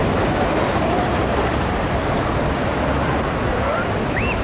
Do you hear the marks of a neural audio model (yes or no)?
no